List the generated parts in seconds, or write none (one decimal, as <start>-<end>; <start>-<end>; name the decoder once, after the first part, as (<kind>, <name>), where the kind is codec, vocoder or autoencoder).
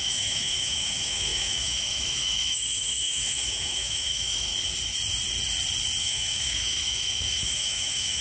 0.0-4.5 (autoencoder, DAC-VAE); 6.0-8.2